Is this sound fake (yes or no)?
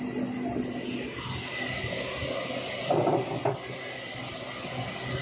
no